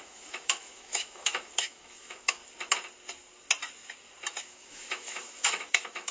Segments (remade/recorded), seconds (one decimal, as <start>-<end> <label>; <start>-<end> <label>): 0.0-2.4 remade; 2.4-4.4 recorded; 4.4-6.1 remade